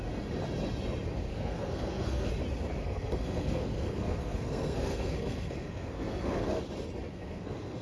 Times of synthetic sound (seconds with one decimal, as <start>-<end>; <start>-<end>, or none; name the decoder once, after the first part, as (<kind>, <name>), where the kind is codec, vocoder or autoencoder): 1.3-2.3 (codec, SNAC); 2.8-6.6; 7.1-7.8